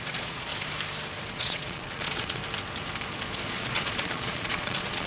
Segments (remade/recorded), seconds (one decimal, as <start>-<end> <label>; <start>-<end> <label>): 0.0-0.5 remade; 0.5-1.3 recorded; 1.3-2.4 remade; 2.4-3.5 recorded; 3.5-5.1 remade